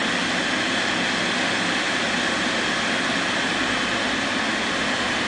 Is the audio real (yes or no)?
yes